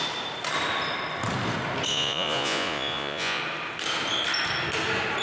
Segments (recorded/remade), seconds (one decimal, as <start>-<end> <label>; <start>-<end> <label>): 0.0-1.9 recorded; 1.9-3.4 remade; 3.4-5.2 recorded